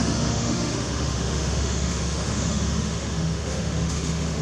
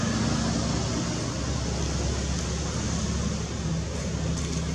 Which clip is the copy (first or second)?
first